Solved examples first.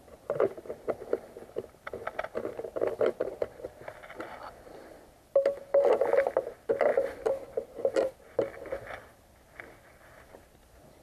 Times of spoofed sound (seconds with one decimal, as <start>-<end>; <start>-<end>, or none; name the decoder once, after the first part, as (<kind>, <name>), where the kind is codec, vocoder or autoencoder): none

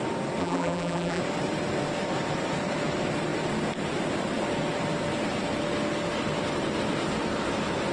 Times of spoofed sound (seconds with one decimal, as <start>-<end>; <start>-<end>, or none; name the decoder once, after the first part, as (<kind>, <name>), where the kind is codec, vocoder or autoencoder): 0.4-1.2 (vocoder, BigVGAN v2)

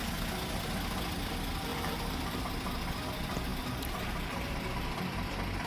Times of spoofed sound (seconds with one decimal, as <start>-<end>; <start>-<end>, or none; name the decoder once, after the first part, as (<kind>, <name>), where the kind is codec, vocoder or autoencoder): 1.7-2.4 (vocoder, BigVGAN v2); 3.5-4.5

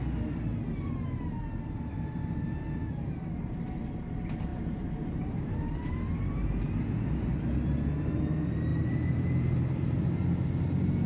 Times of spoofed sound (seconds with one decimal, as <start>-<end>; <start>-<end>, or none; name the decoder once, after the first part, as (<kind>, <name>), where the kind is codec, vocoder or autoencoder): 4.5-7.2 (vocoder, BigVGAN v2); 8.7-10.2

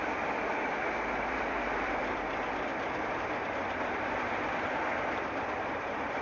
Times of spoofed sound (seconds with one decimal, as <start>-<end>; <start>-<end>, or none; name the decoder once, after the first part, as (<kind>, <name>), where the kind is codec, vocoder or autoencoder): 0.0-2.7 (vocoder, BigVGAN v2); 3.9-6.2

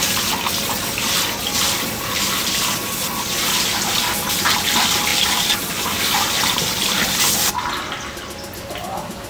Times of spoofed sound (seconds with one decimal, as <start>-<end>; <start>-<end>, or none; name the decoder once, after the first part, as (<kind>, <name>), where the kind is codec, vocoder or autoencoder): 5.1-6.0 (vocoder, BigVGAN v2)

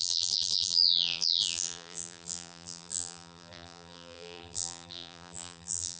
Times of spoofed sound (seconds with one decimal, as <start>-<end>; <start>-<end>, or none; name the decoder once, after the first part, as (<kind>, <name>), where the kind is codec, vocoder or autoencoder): 0.0-6.0 (vocoder, BigVGAN v2)